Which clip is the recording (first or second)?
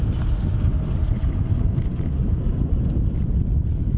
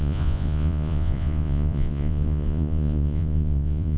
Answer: first